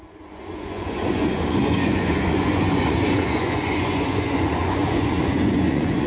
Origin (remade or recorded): remade